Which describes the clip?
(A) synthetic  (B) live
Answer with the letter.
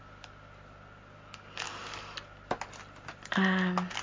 B